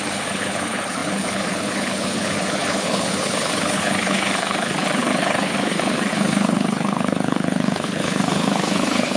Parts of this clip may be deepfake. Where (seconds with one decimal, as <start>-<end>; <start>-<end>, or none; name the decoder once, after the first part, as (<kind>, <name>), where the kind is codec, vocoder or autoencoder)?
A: 0.0-9.2 (codec, HILCodec)